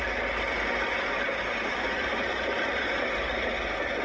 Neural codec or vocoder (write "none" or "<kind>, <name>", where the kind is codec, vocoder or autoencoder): none